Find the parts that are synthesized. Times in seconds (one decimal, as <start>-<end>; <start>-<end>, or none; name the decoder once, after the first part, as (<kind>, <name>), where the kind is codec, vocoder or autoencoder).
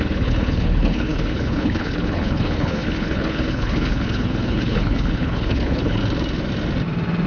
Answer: 0.0-6.0 (codec, HILCodec)